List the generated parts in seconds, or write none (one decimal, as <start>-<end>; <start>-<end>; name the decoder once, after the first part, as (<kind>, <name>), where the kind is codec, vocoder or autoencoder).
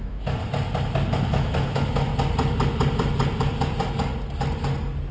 0.0-0.4 (autoencoder, DAC-VAE); 1.1-2.1